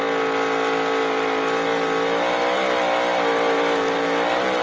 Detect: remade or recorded recorded